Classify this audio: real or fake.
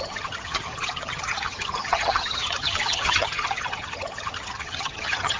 fake